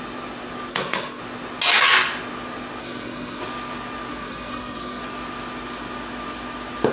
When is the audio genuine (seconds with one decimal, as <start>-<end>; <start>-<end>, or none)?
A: 0.0-0.7; 1.2-2.8; 3.4-4.1; 5.0-6.9